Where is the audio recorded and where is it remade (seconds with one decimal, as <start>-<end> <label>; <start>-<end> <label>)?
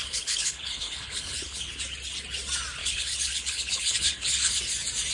0.0-1.7 remade; 1.7-2.8 recorded; 2.8-4.6 remade; 4.6-5.1 recorded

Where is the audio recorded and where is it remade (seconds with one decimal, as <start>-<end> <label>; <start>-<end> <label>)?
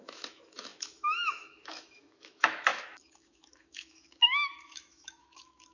0.0-5.7 remade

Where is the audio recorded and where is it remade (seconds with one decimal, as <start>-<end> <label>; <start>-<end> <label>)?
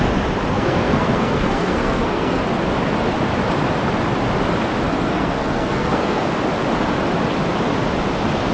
0.0-0.5 recorded; 0.5-2.4 remade; 2.4-4.9 recorded; 4.9-6.3 remade; 6.3-8.5 recorded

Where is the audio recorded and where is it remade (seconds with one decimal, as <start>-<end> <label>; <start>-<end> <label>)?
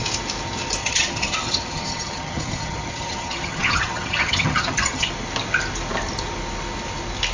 0.0-0.8 recorded; 0.8-5.1 remade; 5.1-7.3 recorded